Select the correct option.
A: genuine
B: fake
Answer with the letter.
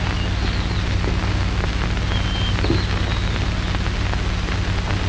A